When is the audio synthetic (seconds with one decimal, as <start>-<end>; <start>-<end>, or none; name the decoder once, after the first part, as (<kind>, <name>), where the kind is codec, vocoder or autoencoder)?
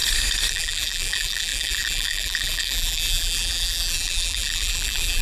0.5-5.2 (vocoder, BigVGAN v2)